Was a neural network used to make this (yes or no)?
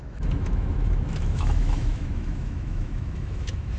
yes